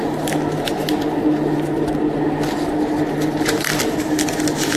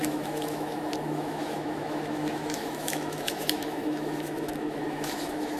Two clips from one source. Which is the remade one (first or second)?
second